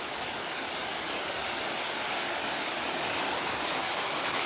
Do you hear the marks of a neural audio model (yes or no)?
yes